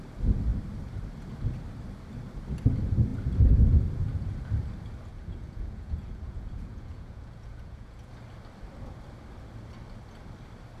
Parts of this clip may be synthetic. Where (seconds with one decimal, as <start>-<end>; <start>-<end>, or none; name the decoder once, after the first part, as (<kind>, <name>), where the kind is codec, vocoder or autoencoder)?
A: 5.1-8.1 (vocoder, Vocos)